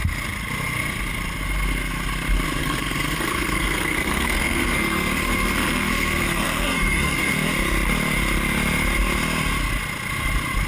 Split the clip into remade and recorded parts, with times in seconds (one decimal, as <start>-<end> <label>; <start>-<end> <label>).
0.0-2.6 recorded; 2.6-7.3 remade; 7.3-10.7 recorded